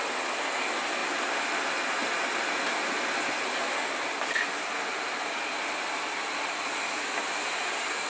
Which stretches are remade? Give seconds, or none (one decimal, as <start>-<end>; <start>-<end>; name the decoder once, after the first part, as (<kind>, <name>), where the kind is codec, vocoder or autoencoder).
none